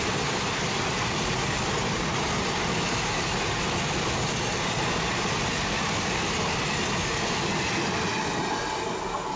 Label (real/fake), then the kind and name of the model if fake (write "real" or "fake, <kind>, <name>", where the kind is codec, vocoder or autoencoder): real